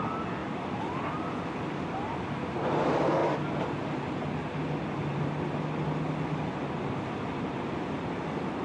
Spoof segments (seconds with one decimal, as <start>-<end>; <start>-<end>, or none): none